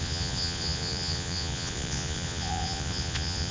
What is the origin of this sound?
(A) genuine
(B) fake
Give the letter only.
B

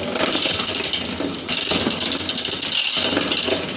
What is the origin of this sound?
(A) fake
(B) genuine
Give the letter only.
B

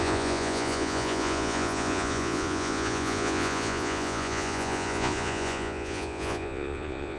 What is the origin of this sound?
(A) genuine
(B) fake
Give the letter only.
B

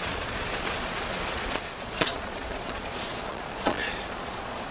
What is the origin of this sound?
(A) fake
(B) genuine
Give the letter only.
A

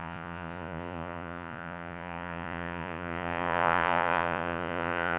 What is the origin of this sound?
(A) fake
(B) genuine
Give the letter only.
A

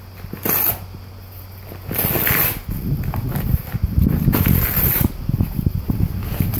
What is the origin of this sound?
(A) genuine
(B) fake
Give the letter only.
A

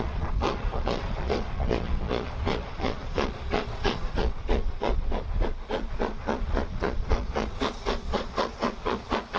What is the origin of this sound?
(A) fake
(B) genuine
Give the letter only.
A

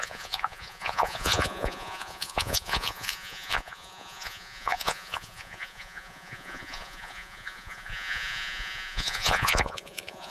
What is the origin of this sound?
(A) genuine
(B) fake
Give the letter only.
B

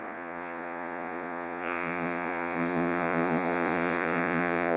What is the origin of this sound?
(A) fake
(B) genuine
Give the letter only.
A